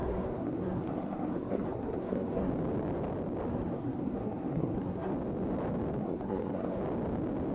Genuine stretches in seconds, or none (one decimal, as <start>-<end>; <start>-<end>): 2.5-3.5; 5.1-6.0; 6.8-7.5